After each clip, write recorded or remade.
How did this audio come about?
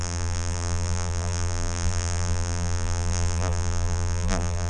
remade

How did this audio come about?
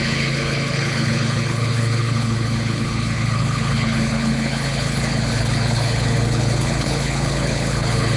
remade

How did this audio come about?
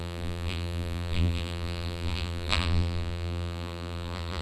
remade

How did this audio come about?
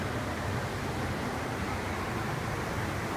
remade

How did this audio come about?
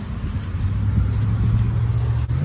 recorded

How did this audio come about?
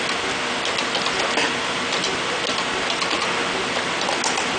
recorded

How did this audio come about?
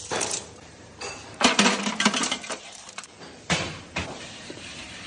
remade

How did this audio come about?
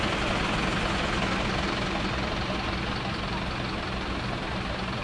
recorded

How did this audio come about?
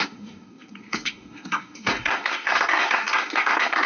remade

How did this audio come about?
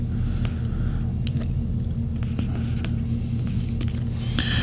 recorded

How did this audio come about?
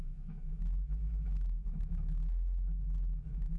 remade